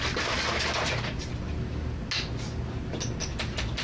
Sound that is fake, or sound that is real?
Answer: real